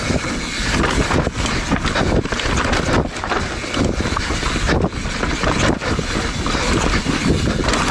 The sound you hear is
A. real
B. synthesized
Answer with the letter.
A